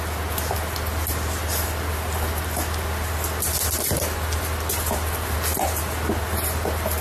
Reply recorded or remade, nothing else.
recorded